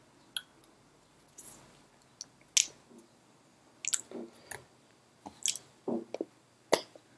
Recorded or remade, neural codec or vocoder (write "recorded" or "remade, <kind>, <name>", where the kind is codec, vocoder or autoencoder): recorded